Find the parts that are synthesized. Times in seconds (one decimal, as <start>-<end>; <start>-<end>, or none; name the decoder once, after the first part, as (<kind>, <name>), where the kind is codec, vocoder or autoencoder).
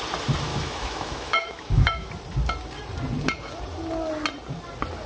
0.5-2.1 (autoencoder, DAC-VAE)